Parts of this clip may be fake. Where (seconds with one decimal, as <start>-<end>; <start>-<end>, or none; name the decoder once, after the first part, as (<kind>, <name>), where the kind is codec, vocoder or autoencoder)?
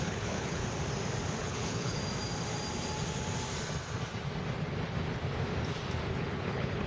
0.0-0.6 (codec, HILCodec); 1.4-2.0; 6.1-6.9